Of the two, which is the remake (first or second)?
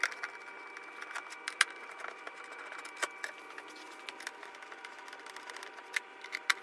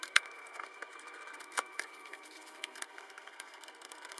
second